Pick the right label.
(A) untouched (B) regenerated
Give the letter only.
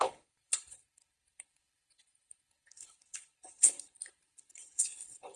B